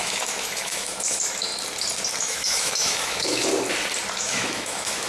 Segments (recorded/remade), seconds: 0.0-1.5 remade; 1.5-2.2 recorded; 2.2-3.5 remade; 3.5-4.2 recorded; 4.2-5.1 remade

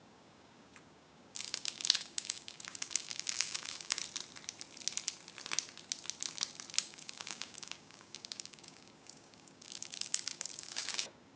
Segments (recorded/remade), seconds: 0.0-4.0 remade; 4.0-6.8 recorded; 6.8-11.4 remade

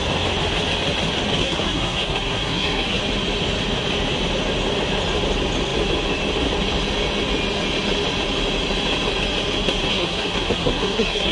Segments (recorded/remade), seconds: 0.0-1.4 recorded; 1.4-3.0 remade; 3.0-9.9 recorded; 9.9-11.3 remade

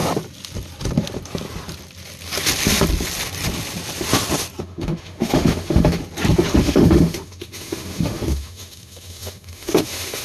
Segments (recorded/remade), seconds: 0.0-4.6 recorded; 4.6-6.0 remade; 6.0-6.6 recorded; 6.6-10.2 remade

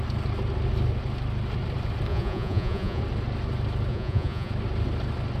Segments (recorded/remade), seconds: 0.0-2.1 recorded; 2.1-3.0 remade; 3.0-3.9 recorded; 3.9-4.5 remade; 4.5-5.4 recorded

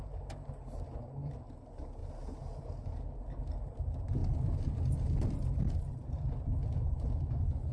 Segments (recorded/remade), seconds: 0.0-7.7 recorded